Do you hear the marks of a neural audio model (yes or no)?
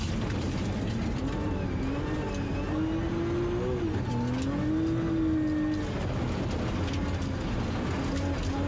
no